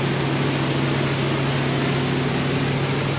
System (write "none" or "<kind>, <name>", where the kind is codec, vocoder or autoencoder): none